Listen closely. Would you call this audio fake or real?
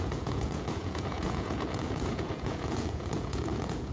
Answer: fake